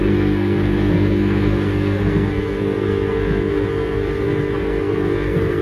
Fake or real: fake